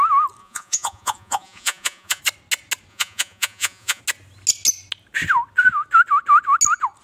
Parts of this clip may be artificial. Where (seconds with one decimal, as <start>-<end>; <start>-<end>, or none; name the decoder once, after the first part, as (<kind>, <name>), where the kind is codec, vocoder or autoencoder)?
0.4-2.2 (vocoder, Vocos); 2.9-4.0